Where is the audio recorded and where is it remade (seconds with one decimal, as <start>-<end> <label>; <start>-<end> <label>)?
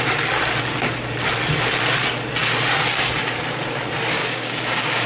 0.0-4.2 recorded; 4.2-5.1 remade